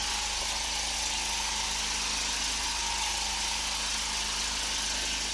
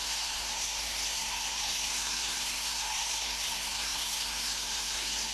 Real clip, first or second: first